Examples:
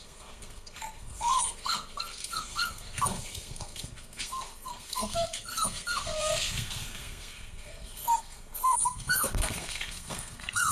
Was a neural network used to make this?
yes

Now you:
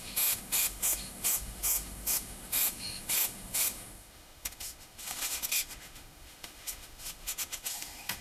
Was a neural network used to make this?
yes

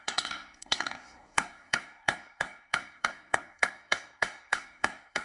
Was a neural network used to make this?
yes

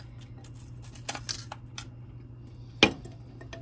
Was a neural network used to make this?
no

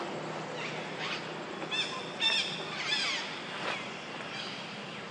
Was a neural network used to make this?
no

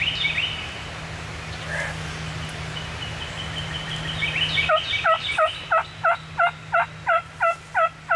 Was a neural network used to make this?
no